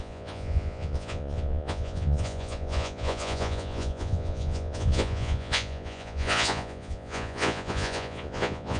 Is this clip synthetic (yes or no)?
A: yes